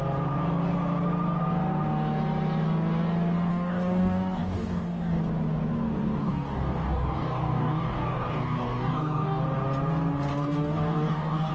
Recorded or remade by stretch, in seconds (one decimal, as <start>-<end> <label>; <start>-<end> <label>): 0.0-3.5 recorded; 3.5-5.2 remade; 5.2-6.2 recorded; 6.2-9.4 remade; 9.4-10.3 recorded; 10.3-11.5 remade